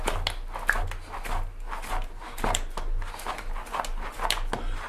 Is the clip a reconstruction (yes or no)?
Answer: no